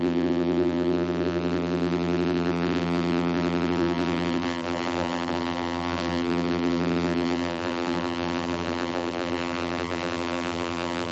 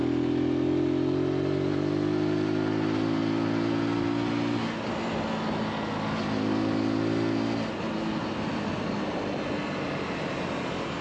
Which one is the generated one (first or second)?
first